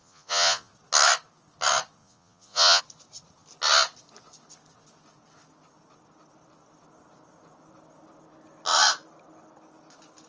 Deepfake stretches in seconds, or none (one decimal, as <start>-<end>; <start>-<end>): 0.0-0.7; 2.0-2.8